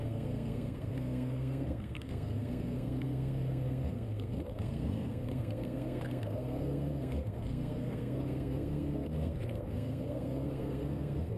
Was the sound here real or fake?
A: fake